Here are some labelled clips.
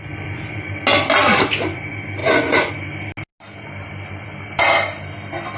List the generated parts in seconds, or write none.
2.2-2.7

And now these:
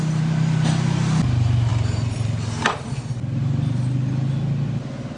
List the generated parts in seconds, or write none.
none

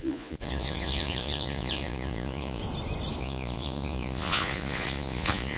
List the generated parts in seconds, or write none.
0.0-2.6; 3.2-5.6

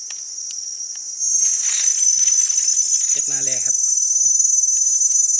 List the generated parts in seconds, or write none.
0.0-3.8

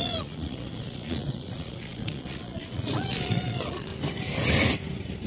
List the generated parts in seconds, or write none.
0.0-3.9

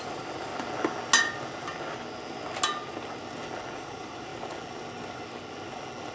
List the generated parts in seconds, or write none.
0.0-0.5; 3.7-4.3